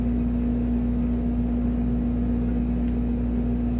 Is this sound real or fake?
real